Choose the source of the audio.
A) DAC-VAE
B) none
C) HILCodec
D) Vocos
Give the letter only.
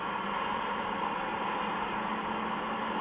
B